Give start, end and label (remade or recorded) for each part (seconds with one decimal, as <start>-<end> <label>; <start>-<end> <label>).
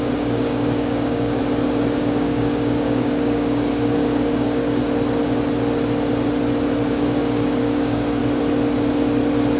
0.0-1.4 remade; 1.4-2.0 recorded; 2.0-4.8 remade; 4.8-6.9 recorded; 6.9-8.2 remade; 8.2-9.6 recorded